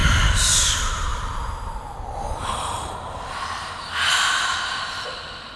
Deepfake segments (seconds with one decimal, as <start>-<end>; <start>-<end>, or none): none